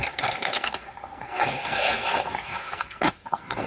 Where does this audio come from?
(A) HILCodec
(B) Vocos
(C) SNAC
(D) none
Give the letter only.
C